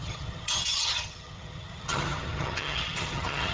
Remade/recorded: remade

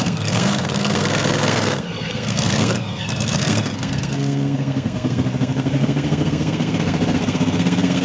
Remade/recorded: remade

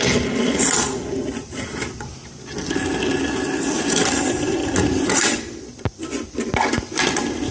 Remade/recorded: recorded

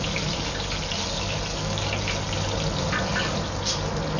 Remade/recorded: recorded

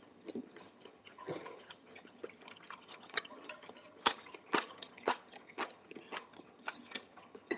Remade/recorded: remade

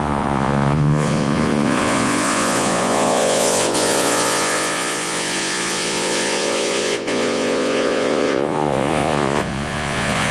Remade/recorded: remade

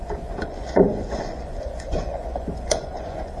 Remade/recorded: remade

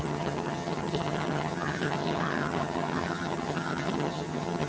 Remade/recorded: remade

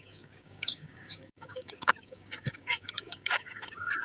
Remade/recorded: remade